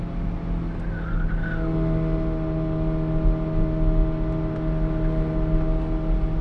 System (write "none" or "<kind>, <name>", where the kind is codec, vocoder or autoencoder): none